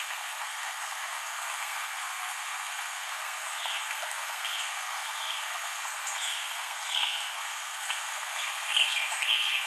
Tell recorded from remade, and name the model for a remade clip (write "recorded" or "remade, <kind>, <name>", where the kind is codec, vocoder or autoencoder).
remade, codec, SNAC